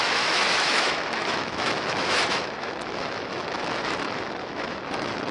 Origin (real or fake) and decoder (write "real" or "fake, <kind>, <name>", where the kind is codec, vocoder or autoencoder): fake, autoencoder, DAC-VAE